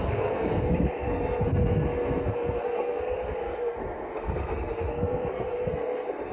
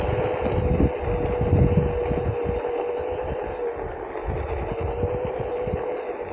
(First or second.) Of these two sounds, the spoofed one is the first